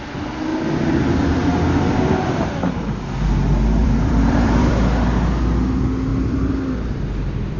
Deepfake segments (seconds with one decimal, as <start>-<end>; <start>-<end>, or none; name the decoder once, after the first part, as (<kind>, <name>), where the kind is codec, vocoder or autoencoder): 3.8-4.7 (vocoder, BigVGAN v2); 6.1-7.1